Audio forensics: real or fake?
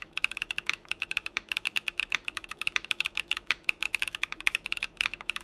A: fake